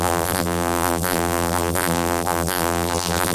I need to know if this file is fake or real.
fake